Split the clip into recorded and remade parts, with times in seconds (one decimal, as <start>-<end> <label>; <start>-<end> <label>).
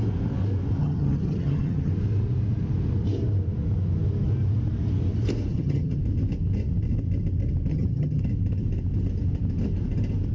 0.0-0.8 recorded; 0.8-1.9 remade; 1.9-5.5 recorded; 5.5-6.0 remade; 6.0-7.7 recorded; 7.7-8.2 remade; 8.2-10.3 recorded